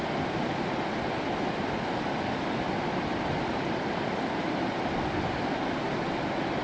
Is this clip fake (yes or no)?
no